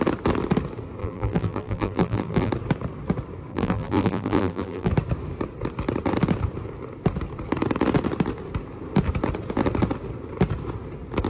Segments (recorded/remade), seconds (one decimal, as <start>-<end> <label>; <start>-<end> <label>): 0.0-1.0 recorded; 1.0-2.5 remade; 2.5-3.5 recorded; 3.5-4.9 remade; 4.9-11.3 recorded